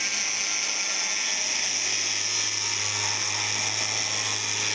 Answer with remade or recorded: recorded